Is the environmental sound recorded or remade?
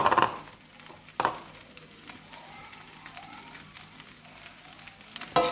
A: recorded